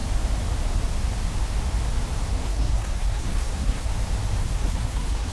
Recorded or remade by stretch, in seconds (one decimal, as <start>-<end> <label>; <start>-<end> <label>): 0.0-2.3 recorded; 2.3-3.9 remade; 3.9-4.4 recorded; 4.4-5.3 remade